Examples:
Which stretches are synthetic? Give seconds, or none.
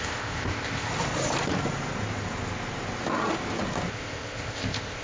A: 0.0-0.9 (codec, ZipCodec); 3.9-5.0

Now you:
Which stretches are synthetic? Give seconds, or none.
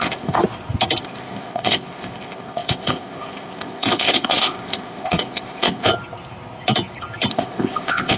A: 0.0-0.4 (codec, ZipCodec); 1.0-5.9; 7.3-8.2